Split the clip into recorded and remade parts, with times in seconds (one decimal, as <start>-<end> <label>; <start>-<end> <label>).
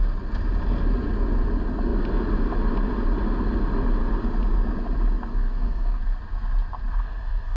0.0-5.3 recorded; 5.3-6.0 remade; 6.0-6.9 recorded; 6.9-7.6 remade